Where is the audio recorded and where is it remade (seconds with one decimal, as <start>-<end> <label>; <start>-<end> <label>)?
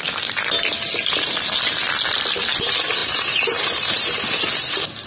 0.0-3.0 recorded; 3.0-4.4 remade; 4.4-5.1 recorded